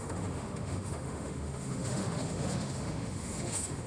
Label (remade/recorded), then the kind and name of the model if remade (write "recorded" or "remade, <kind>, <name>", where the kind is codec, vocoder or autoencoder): remade, autoencoder, DAC-VAE